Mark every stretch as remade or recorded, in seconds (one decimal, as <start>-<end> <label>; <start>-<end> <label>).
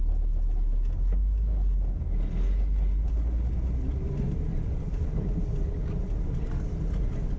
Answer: 0.0-4.5 recorded; 4.5-5.7 remade; 5.7-7.4 recorded